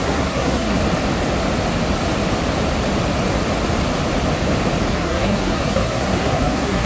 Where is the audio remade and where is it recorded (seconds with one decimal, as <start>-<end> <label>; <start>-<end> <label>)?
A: 0.0-0.8 remade; 0.8-4.9 recorded; 4.9-6.9 remade